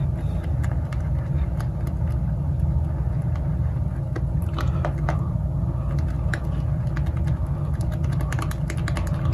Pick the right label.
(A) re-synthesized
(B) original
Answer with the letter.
B